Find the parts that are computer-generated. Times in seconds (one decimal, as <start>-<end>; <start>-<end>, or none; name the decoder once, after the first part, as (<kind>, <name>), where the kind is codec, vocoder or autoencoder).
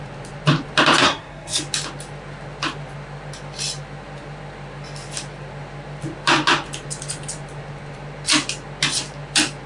1.0-1.6 (codec, SNAC)